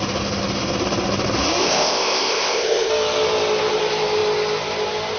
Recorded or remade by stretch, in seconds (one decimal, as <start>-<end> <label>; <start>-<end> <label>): 0.0-1.6 recorded; 1.6-2.9 remade; 2.9-5.2 recorded